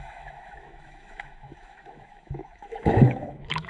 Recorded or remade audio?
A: remade